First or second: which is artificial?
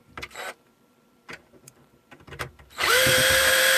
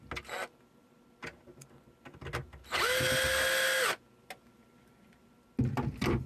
first